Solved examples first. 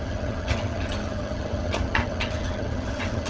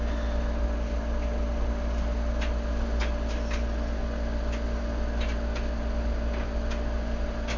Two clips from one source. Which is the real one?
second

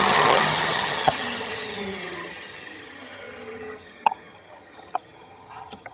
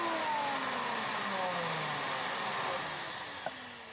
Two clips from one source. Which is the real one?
second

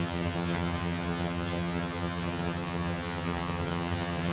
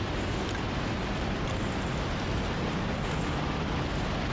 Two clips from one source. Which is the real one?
second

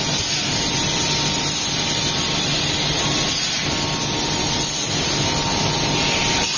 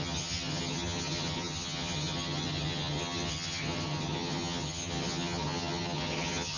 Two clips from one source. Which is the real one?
first